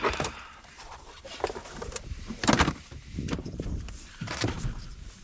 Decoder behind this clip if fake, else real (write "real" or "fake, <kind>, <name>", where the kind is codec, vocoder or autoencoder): fake, vocoder, BigVGAN v2